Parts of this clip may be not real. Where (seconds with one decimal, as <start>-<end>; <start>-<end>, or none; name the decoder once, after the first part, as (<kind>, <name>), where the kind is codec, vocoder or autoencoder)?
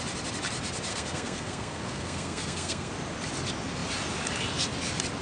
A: 0.9-2.9 (codec, SNAC)